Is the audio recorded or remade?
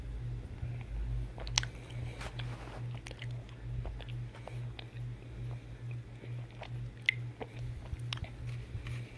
recorded